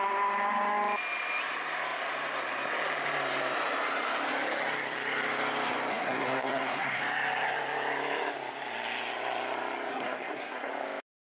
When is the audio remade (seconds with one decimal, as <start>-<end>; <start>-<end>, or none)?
5.9-7.0; 9.9-10.7